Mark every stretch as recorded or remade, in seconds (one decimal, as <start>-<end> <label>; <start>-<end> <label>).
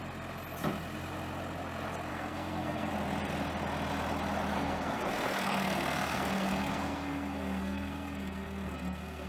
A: 0.0-2.1 recorded; 2.1-2.9 remade; 2.9-4.5 recorded; 4.5-9.3 remade